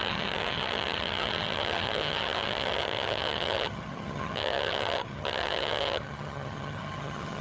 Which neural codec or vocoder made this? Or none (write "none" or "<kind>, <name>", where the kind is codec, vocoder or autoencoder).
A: vocoder, HiFi-GAN